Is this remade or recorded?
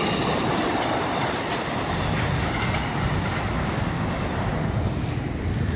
recorded